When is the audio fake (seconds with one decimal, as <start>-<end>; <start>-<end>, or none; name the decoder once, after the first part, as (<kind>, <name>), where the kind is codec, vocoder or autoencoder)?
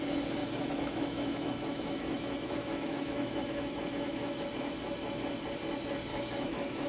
0.4-4.4 (autoencoder, DAC-VAE); 6.1-6.9